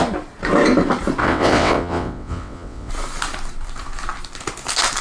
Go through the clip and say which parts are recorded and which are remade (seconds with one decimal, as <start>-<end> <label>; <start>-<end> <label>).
0.0-1.2 recorded; 1.2-2.9 remade; 2.9-5.0 recorded